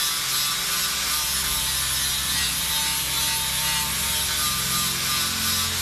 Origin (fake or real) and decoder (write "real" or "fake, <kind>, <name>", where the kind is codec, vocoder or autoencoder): real